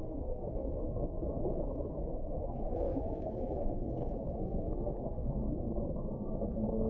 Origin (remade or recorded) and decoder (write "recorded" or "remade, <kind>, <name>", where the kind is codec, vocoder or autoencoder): remade, codec, SNAC